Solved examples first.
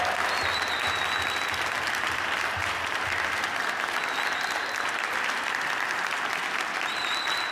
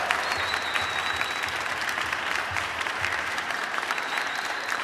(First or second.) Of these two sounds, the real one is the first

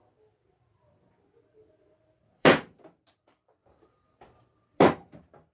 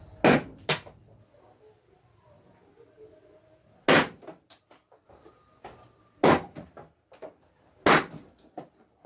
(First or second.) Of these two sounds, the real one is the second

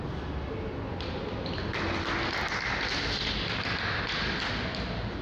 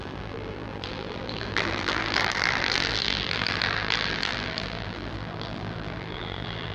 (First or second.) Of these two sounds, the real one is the first